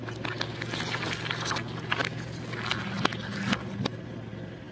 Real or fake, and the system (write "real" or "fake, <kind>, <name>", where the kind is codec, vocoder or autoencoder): real